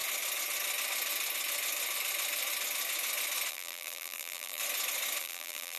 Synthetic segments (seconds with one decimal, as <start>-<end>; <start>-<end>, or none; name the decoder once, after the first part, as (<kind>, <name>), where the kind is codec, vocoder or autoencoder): 3.5-4.6 (vocoder, BigVGAN v2); 5.2-5.8